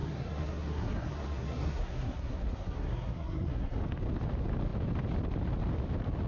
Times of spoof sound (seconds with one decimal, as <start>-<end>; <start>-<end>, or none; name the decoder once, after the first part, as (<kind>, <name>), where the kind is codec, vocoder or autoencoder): 0.0-3.8 (codec, SNAC)